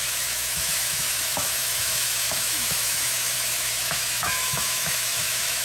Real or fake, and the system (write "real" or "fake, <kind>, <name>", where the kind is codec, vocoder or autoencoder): fake, autoencoder, DAC-VAE